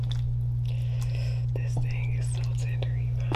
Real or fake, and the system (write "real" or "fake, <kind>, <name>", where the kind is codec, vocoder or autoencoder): real